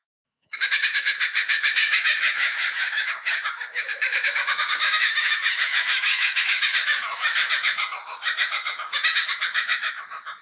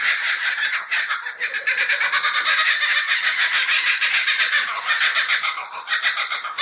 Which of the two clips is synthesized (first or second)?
first